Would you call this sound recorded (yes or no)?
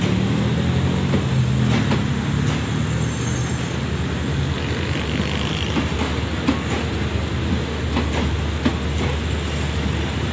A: yes